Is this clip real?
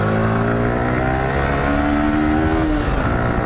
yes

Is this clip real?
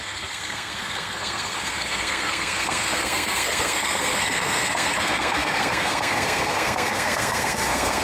no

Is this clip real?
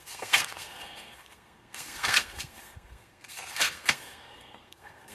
no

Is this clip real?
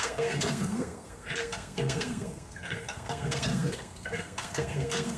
no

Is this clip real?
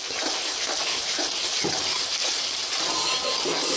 yes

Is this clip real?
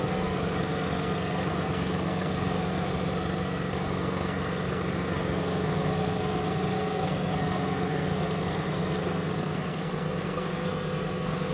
no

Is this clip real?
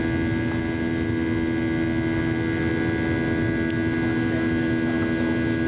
yes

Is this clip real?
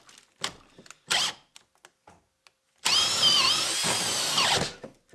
yes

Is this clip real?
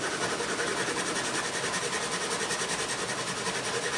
yes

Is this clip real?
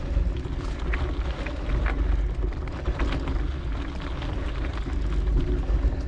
yes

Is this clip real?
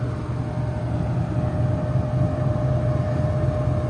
yes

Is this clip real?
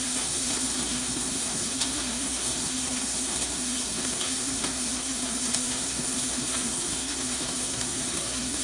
no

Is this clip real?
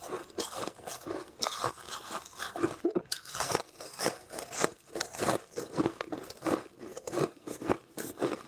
no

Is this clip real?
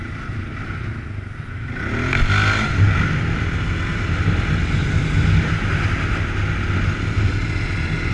yes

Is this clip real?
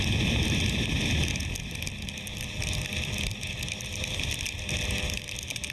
yes